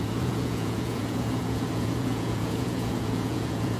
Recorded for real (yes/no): no